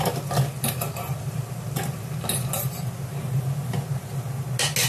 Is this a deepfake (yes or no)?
no